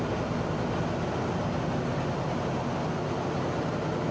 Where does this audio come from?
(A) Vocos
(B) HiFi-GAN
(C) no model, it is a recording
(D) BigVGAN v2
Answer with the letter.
C